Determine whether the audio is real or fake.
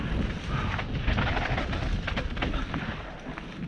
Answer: real